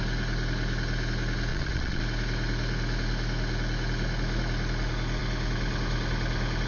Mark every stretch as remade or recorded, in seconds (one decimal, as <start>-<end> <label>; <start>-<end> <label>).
0.0-1.5 recorded; 1.5-2.0 remade; 2.0-6.7 recorded